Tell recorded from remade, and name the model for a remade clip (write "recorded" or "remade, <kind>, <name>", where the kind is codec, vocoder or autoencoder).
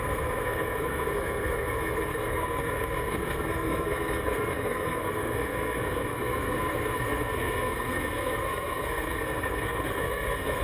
remade, codec, SNAC